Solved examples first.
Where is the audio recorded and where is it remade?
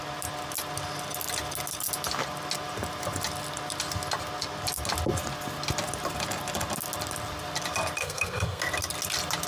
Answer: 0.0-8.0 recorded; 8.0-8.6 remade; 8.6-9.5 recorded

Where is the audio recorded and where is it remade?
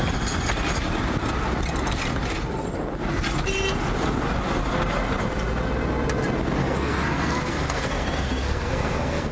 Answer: 0.0-6.6 recorded; 6.6-9.3 remade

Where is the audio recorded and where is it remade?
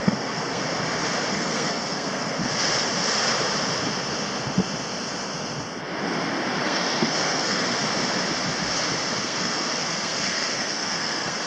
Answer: 0.0-0.6 remade; 0.6-1.3 recorded; 1.3-2.4 remade; 2.4-6.6 recorded; 6.6-7.8 remade; 7.8-9.2 recorded; 9.2-11.5 remade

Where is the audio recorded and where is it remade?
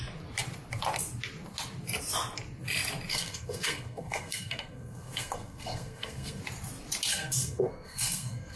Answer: 0.0-3.1 recorded; 3.1-6.4 remade; 6.4-7.1 recorded; 7.1-8.6 remade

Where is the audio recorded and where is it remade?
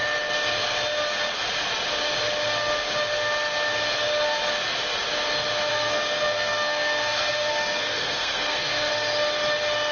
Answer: 0.0-5.7 recorded; 5.7-8.9 remade; 8.9-9.9 recorded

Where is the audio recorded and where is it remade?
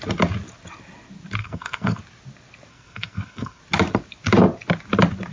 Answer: 0.0-1.4 recorded; 1.4-2.0 remade; 2.0-2.7 recorded; 2.7-3.6 remade; 3.6-5.3 recorded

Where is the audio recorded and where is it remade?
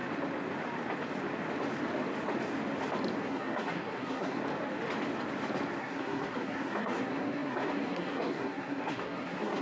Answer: 0.0-3.2 recorded; 3.2-4.4 remade; 4.4-5.8 recorded; 5.8-9.6 remade